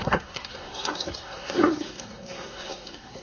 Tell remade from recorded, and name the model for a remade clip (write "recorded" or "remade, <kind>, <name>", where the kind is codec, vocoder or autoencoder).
remade, codec, SNAC